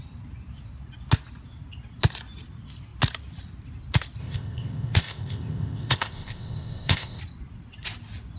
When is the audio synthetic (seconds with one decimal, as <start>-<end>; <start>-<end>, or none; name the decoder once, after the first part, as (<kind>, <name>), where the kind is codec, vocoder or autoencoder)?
4.2-7.2 (codec, ZipCodec)